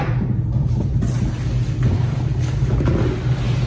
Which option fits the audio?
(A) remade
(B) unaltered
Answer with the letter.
B